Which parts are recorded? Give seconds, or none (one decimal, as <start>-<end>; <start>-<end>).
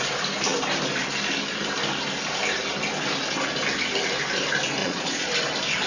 0.0-4.8; 5.3-5.9